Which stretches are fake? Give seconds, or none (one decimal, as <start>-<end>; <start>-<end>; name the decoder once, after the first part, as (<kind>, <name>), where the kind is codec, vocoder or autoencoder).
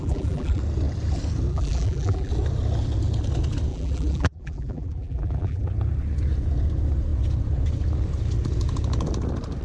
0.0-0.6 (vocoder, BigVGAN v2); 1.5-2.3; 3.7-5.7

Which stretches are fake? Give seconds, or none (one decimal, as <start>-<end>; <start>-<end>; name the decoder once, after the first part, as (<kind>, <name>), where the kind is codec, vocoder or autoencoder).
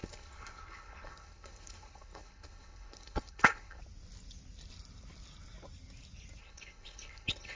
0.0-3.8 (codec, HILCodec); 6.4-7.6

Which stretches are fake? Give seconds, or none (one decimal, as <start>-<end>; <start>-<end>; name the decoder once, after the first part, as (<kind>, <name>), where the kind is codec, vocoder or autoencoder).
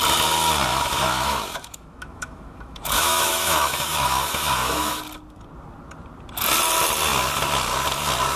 0.7-5.0 (autoencoder, DAC-VAE)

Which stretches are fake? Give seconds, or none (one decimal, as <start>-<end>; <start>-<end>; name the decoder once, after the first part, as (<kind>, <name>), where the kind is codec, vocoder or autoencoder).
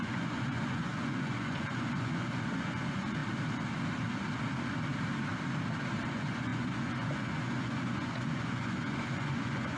0.0-3.2 (vocoder, Vocos); 6.1-9.8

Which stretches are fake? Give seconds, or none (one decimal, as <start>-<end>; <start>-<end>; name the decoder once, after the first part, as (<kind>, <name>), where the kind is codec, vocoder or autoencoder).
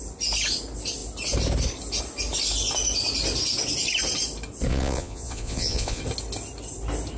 4.7-6.0 (vocoder, Vocos)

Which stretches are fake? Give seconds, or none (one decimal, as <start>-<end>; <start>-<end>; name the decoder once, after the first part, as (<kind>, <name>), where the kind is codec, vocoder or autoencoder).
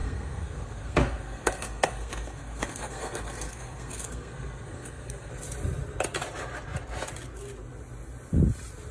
0.0-5.3 (codec, SNAC)